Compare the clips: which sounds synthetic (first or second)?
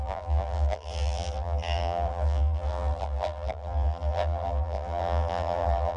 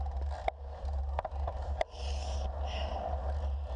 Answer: first